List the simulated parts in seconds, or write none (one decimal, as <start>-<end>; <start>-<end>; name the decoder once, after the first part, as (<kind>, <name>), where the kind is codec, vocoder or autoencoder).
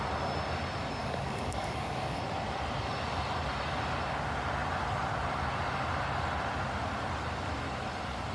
1.0-2.2 (codec, DAC)